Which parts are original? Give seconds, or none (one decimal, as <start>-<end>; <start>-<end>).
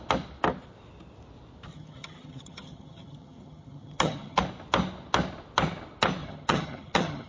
0.0-1.7; 4.4-6.2